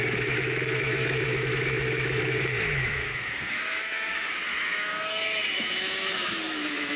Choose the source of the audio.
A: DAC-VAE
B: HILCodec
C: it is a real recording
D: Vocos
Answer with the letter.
A